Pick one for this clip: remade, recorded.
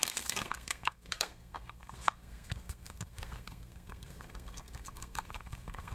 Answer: remade